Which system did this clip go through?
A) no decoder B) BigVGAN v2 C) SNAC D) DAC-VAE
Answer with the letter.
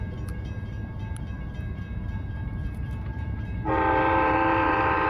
B